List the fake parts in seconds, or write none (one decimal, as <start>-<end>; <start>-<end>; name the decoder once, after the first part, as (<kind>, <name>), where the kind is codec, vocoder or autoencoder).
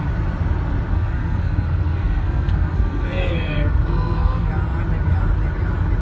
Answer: 0.9-4.5 (codec, SNAC)